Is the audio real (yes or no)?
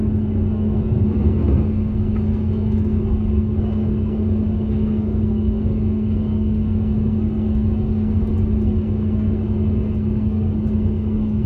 no